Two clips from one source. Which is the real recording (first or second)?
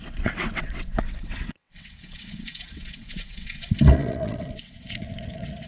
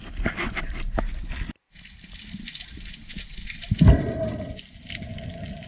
second